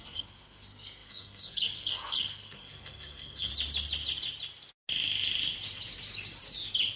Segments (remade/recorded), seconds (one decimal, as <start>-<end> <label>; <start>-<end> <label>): 0.0-3.5 remade; 3.5-7.0 recorded